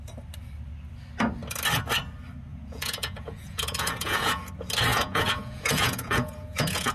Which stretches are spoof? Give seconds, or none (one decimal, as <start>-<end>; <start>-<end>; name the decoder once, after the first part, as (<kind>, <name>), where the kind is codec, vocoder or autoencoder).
2.5-4.5 (vocoder, Vocos); 4.9-6.9